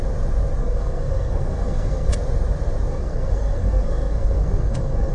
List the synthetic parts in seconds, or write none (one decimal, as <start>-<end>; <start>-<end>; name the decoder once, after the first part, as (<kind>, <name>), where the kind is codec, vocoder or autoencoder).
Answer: 0.6-2.1 (codec, SNAC); 2.9-5.1